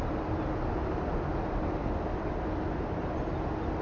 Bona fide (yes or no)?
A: yes